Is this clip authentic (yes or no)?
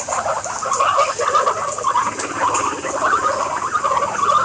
yes